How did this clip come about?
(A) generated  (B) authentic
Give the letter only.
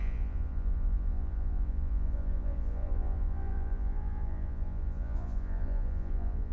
A